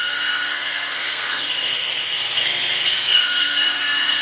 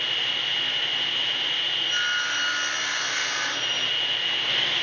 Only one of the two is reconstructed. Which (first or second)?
first